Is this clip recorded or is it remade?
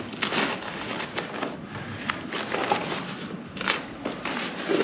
recorded